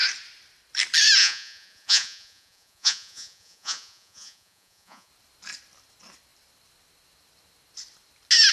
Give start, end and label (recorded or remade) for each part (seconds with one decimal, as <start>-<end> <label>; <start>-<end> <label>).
0.0-1.2 recorded; 1.2-5.1 remade; 5.1-8.5 recorded